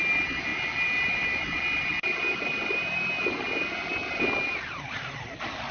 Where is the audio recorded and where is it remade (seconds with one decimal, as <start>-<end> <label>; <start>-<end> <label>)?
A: 0.0-5.7 recorded